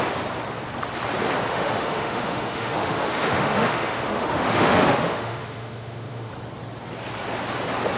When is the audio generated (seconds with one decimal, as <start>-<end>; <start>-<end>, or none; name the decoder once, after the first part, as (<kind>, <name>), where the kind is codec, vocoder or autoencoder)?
1.5-6.3 (autoencoder, DAC-VAE)